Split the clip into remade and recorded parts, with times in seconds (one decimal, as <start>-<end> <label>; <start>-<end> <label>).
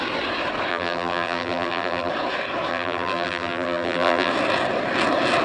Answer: 0.0-0.7 recorded; 0.7-2.1 remade; 2.1-2.7 recorded; 2.7-4.3 remade; 4.3-5.4 recorded